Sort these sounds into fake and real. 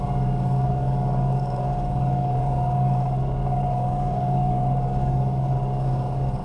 fake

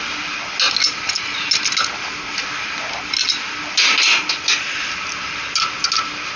real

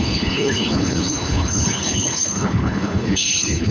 fake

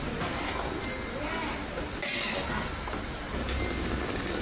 real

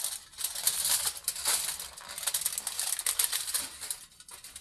real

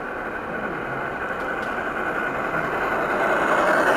real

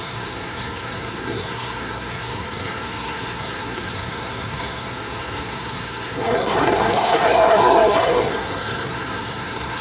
fake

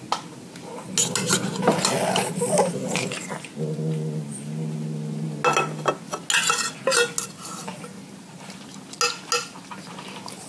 real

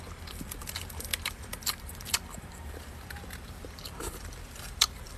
fake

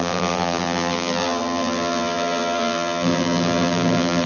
fake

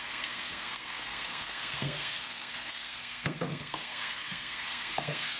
fake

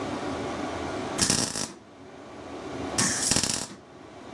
real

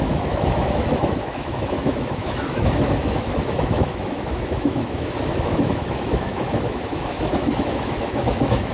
fake